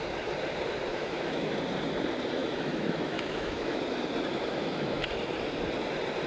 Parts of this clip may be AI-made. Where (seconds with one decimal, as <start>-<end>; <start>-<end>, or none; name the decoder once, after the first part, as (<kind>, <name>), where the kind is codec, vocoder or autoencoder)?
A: 0.9-1.5 (autoencoder, DAC-VAE); 2.4-3.8; 4.3-5.1